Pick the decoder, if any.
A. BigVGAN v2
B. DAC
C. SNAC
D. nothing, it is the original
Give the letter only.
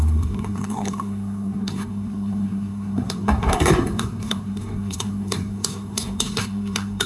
C